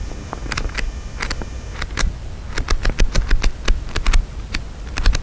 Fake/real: real